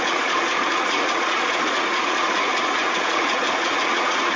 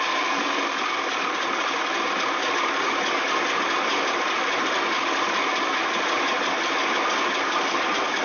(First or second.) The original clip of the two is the second